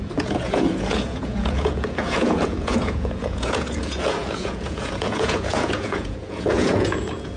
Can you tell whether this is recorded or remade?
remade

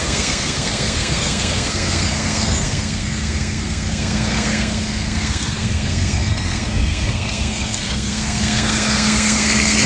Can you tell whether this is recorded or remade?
remade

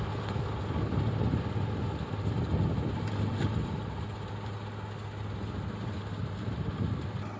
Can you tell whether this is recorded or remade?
recorded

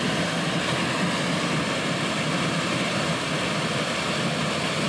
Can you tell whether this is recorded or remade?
recorded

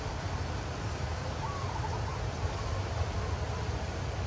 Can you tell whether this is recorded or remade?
recorded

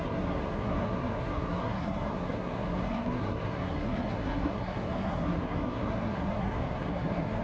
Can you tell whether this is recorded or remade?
remade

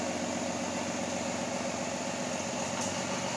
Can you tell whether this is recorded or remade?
recorded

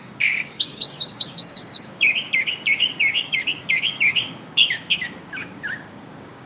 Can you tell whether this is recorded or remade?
remade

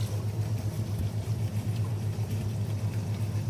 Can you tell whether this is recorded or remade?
recorded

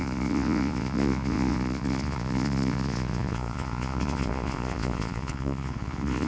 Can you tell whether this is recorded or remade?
remade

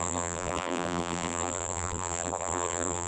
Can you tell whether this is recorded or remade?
remade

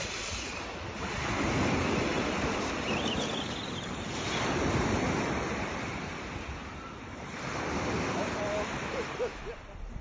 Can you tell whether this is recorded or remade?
recorded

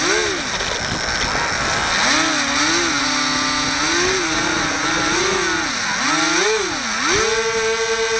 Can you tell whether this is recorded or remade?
recorded